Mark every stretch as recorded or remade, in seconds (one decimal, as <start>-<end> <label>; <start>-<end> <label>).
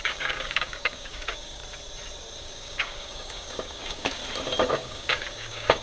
0.0-1.6 remade; 1.6-2.4 recorded; 2.4-4.2 remade; 4.2-4.7 recorded; 4.7-5.8 remade